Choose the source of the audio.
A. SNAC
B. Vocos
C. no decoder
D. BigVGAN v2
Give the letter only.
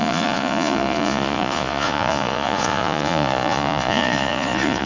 B